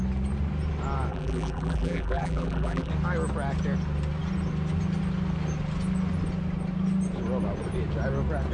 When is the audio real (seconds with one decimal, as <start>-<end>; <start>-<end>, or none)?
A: 0.0-1.1; 2.9-8.5